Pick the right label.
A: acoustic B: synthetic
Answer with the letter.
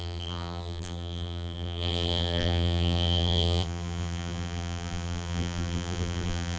B